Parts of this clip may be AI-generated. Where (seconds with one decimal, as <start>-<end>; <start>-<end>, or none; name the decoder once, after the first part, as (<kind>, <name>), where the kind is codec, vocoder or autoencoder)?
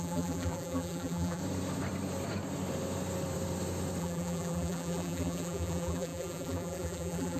0.0-1.4 (vocoder, BigVGAN v2); 4.0-7.4